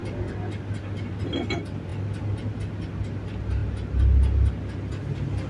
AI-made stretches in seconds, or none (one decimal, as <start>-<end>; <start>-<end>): none